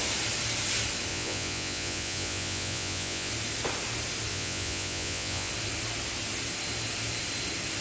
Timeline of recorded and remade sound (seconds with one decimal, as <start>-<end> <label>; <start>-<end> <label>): 0.0-1.1 recorded; 1.1-3.3 remade; 3.3-4.3 recorded; 4.3-5.5 remade; 5.5-7.8 recorded